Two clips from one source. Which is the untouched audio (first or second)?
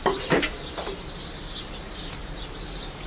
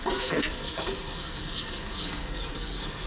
first